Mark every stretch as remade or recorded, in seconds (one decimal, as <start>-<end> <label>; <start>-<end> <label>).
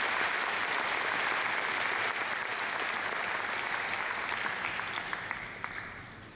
0.0-6.4 recorded